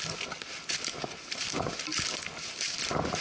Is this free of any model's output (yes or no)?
yes